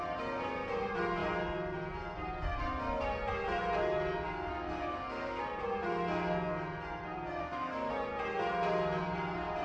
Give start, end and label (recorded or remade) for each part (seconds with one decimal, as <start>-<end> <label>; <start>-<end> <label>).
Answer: 0.0-4.5 recorded; 4.5-5.4 remade; 5.4-7.4 recorded; 7.4-7.9 remade; 7.9-9.6 recorded